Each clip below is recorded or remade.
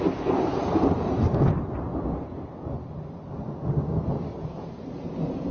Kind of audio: recorded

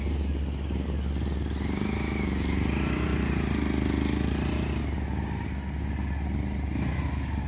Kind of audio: recorded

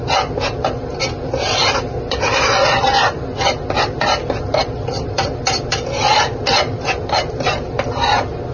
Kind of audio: recorded